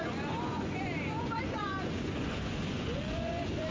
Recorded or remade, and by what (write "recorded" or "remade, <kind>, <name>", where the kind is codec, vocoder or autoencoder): remade, vocoder, Vocos